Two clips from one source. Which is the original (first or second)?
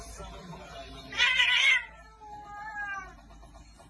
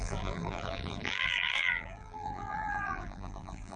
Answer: first